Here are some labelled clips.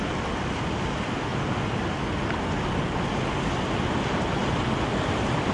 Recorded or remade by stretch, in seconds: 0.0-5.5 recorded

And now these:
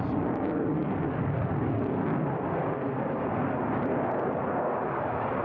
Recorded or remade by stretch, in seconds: 0.0-5.4 recorded

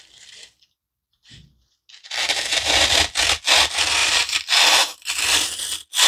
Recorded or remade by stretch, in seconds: 0.0-2.2 recorded; 2.2-2.9 remade; 2.9-4.0 recorded; 4.0-5.2 remade; 5.2-6.1 recorded

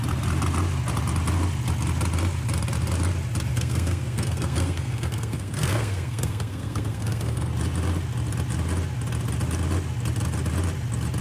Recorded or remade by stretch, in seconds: 0.0-3.5 recorded; 3.5-7.5 remade; 7.5-11.2 recorded

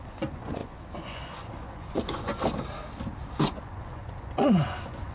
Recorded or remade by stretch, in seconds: 0.0-2.3 remade; 2.3-3.5 recorded; 3.5-5.1 remade

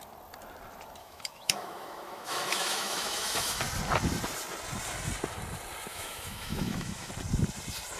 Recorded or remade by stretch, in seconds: 0.0-1.0 recorded; 1.0-3.6 remade; 3.6-5.9 recorded; 5.9-7.1 remade; 7.1-8.0 recorded